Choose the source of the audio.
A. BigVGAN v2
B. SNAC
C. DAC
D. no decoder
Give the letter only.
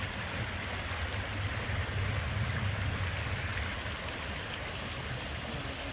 D